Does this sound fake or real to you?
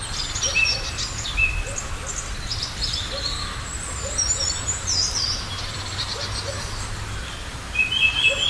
real